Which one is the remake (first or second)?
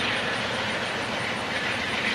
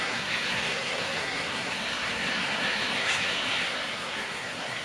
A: second